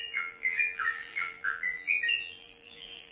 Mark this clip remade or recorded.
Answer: remade